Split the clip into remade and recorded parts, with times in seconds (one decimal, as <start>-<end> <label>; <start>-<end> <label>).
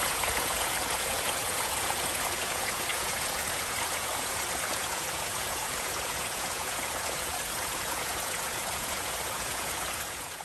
0.0-10.4 remade